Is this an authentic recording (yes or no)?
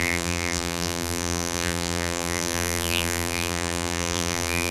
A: no